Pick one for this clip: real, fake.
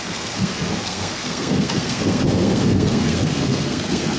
fake